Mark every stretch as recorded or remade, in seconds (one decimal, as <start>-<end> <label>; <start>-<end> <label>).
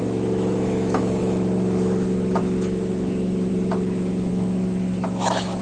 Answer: 0.0-5.6 remade